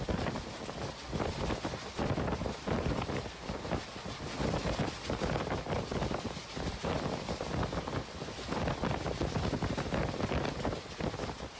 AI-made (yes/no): no